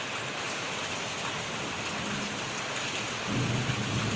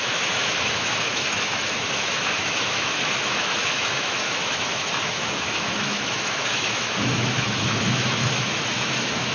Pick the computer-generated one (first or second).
second